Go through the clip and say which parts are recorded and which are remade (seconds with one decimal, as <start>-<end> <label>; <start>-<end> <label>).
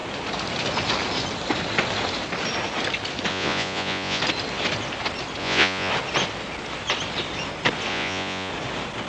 0.0-3.3 recorded; 3.3-4.2 remade; 4.2-5.4 recorded; 5.4-5.9 remade; 5.9-7.9 recorded; 7.9-8.5 remade; 8.5-9.1 recorded